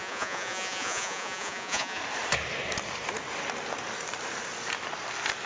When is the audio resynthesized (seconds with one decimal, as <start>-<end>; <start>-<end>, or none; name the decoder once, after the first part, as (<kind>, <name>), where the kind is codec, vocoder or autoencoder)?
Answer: 0.0-2.0 (vocoder, Vocos)